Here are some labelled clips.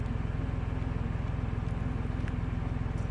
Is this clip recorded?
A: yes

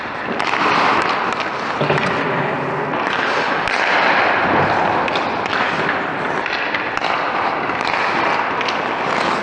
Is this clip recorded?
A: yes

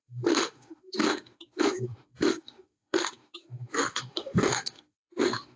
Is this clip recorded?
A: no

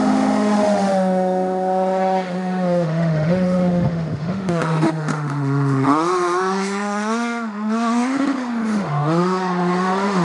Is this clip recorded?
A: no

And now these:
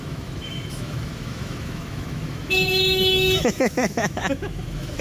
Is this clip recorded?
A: no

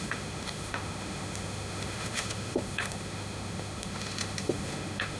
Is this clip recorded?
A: no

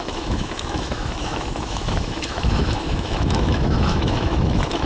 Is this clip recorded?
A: no